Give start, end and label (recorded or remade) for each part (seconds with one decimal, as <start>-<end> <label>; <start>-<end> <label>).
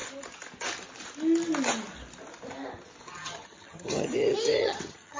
0.0-3.1 recorded; 3.1-4.1 remade; 4.1-4.6 recorded; 4.6-5.2 remade